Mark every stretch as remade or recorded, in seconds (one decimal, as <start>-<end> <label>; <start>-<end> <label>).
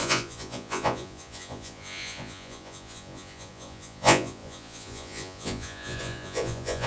0.0-6.9 remade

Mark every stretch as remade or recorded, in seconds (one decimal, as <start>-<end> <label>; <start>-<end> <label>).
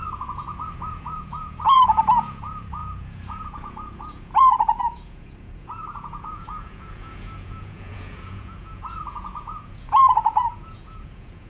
0.0-11.5 remade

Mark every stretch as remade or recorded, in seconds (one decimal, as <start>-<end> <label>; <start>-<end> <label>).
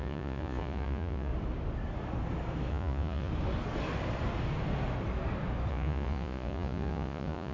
0.0-1.3 remade; 1.3-2.7 recorded; 2.7-3.3 remade; 3.3-5.7 recorded; 5.7-7.5 remade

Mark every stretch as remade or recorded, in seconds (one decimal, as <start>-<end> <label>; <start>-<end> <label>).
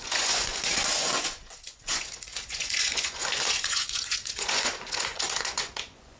0.0-6.2 remade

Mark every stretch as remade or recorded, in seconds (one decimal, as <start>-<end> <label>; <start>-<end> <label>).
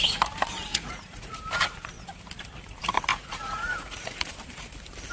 0.0-0.7 recorded; 0.7-1.4 remade; 1.4-3.1 recorded; 3.1-4.3 remade; 4.3-5.1 recorded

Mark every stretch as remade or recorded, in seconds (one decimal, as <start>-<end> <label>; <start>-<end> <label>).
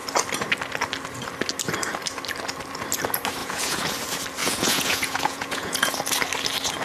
0.0-3.4 recorded; 3.4-3.9 remade; 3.9-4.4 recorded; 4.4-5.9 remade; 5.9-6.8 recorded